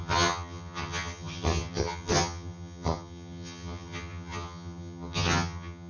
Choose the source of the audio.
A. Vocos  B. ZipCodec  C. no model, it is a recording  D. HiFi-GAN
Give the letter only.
D